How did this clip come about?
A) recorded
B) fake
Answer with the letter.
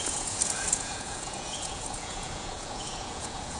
B